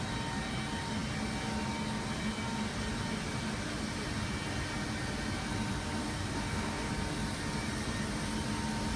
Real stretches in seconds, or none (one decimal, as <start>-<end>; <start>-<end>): 0.0-6.0; 6.9-9.0